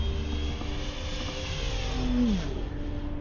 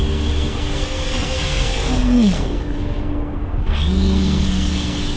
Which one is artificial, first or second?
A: second